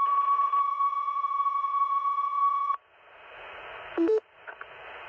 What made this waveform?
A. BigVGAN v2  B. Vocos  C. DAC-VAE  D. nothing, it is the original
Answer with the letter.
B